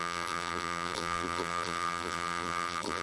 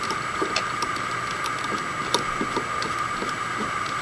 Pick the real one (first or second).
second